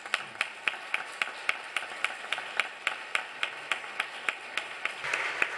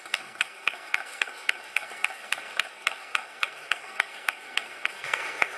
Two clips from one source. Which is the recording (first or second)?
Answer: first